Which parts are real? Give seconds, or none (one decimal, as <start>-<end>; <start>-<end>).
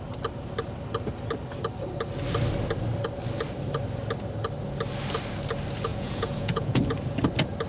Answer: 0.0-5.9; 6.8-7.7